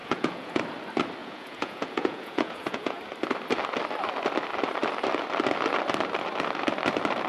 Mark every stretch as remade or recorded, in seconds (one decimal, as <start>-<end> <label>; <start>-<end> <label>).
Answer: 0.0-0.6 remade; 0.6-1.2 recorded; 1.2-3.0 remade; 3.0-7.3 recorded